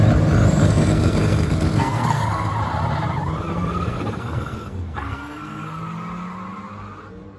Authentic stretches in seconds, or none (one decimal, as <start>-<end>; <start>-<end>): 0.0-0.6; 2.5-3.5; 5.8-7.4